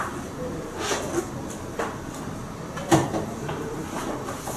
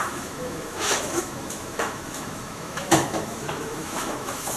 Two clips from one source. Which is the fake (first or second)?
second